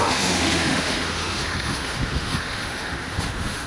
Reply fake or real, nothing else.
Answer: fake